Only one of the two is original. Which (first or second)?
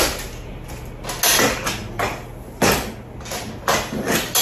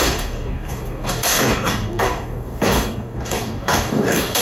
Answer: first